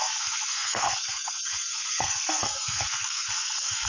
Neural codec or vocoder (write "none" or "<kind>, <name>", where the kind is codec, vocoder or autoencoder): codec, SNAC